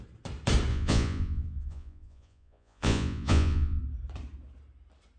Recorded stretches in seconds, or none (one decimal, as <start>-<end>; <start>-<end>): 0.0-0.7; 3.8-5.2